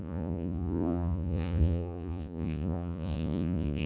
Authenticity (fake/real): fake